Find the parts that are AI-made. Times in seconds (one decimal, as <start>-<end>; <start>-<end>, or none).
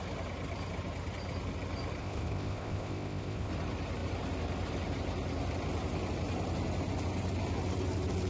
2.0-3.5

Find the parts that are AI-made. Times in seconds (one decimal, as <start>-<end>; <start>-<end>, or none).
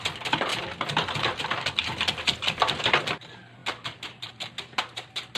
none